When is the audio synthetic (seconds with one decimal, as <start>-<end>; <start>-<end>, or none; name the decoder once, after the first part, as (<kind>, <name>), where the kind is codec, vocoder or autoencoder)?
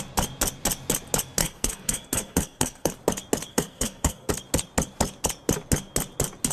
1.4-2.9 (codec, SNAC); 3.5-4.3